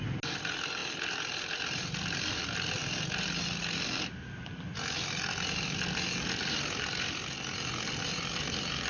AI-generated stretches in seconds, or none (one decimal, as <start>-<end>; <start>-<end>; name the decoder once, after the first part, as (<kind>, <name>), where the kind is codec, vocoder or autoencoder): none